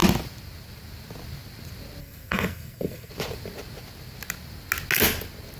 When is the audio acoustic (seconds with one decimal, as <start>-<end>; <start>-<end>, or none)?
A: 0.0-2.0; 3.1-5.6